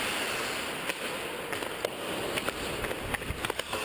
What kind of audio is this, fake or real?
real